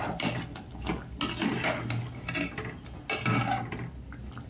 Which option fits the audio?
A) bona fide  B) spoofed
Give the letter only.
A